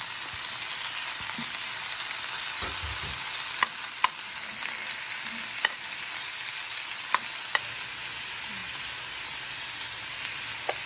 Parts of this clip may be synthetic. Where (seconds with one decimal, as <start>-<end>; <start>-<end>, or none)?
none